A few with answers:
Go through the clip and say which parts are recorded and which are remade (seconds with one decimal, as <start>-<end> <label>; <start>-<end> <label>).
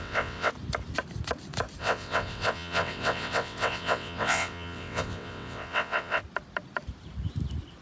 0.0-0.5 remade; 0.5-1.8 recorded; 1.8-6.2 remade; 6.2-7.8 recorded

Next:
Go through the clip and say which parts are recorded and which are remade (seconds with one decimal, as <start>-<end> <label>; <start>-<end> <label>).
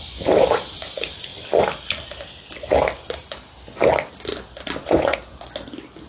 0.0-4.8 recorded; 4.8-5.4 remade; 5.4-6.1 recorded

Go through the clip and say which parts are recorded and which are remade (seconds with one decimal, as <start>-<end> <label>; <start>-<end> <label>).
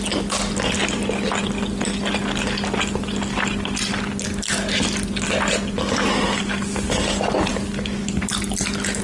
0.0-9.0 recorded